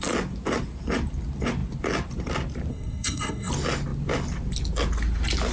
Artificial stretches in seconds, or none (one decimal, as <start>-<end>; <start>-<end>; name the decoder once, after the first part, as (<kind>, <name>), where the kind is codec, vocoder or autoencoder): 2.7-3.5 (codec, SNAC)